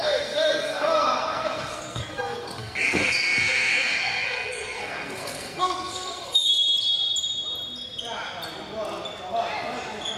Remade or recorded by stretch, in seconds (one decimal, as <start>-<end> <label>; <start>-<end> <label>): 0.0-6.5 remade; 6.5-10.2 recorded